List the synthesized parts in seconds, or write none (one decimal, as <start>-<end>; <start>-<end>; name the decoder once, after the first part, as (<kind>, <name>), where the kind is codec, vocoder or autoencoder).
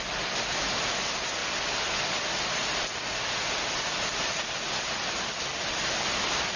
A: none